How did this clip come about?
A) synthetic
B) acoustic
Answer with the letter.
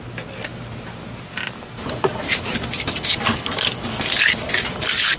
B